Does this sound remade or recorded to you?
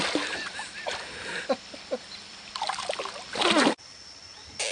recorded